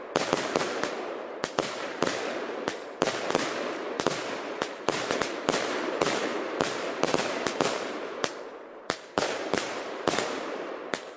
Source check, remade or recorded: remade